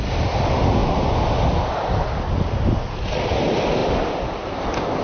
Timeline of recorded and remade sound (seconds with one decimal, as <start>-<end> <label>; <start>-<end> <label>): 0.0-5.0 recorded